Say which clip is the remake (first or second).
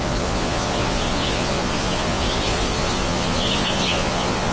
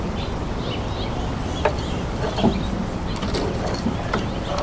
first